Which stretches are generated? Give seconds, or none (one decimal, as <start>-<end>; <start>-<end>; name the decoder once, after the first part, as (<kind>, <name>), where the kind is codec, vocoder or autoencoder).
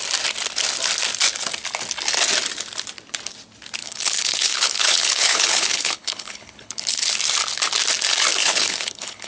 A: 3.8-7.1 (codec, HILCodec); 8.4-9.3